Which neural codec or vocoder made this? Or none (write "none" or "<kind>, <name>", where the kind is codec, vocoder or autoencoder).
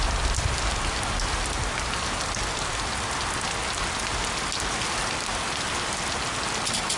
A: none